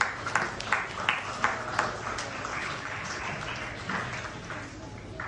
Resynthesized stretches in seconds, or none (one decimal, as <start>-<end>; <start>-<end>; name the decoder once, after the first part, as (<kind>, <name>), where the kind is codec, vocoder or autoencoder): 2.5-3.2 (codec, HILCodec)